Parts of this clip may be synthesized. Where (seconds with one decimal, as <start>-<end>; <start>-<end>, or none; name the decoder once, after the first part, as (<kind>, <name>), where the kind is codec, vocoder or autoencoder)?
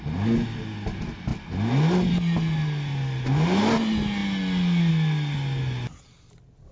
none